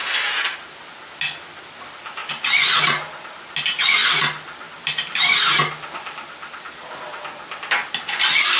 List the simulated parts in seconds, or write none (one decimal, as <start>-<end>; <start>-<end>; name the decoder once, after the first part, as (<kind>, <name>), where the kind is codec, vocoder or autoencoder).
none

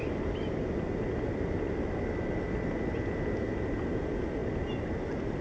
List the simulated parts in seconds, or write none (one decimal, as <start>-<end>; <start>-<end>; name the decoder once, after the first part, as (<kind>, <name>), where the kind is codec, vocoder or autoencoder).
none

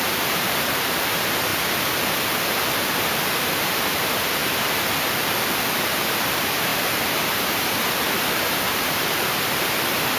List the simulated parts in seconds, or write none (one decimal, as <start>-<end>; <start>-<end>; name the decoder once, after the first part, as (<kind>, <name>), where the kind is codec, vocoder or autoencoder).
0.0-1.5 (vocoder, BigVGAN v2); 3.3-4.4; 6.1-10.2

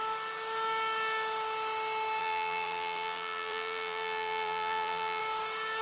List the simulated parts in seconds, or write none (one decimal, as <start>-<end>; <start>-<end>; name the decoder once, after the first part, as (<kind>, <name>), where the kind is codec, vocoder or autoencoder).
2.2-5.2 (vocoder, BigVGAN v2)

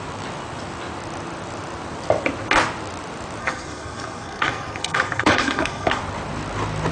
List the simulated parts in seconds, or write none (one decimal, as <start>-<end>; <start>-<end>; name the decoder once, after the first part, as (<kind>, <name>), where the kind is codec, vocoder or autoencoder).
3.4-6.0 (codec, SNAC)

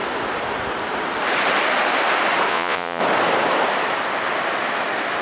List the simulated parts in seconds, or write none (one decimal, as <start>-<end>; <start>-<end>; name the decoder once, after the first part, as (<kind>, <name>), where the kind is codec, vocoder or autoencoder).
2.5-3.0 (vocoder, Vocos)

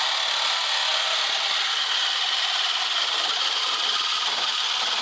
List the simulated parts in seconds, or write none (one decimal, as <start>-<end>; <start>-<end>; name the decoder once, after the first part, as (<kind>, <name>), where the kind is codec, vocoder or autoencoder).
none